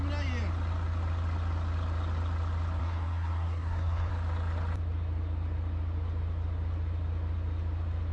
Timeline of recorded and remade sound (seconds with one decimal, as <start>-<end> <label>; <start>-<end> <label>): 0.0-2.8 recorded; 2.8-4.1 remade; 4.1-8.1 recorded